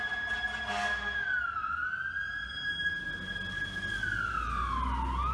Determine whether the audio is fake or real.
real